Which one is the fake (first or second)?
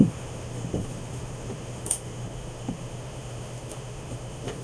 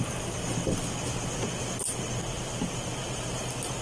first